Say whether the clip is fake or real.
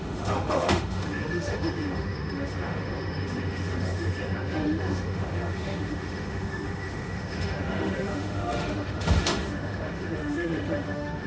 fake